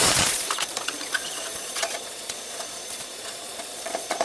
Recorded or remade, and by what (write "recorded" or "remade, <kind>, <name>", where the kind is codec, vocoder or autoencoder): remade, vocoder, Vocos